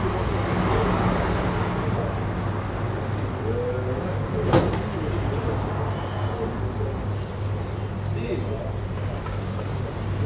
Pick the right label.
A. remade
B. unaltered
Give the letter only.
B